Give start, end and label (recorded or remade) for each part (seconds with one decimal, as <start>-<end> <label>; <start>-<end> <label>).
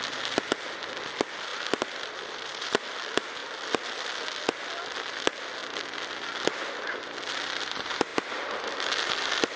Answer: 0.0-1.5 recorded; 1.5-2.8 remade; 2.8-3.4 recorded; 3.4-4.1 remade; 4.1-9.6 recorded